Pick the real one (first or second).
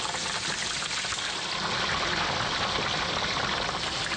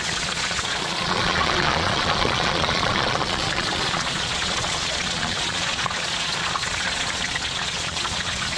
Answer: first